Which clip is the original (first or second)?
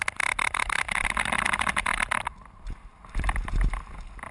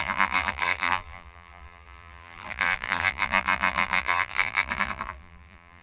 first